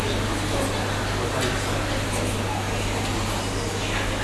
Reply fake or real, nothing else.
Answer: real